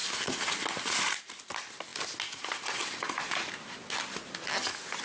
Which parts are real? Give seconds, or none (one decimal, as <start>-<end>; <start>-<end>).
0.0-5.0